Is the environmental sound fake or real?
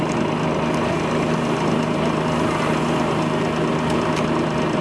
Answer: real